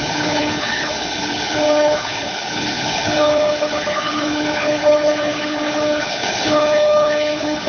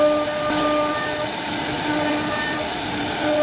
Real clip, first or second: second